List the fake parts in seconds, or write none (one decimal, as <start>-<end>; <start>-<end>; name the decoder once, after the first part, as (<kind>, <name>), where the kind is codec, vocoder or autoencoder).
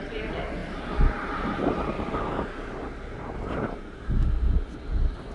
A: none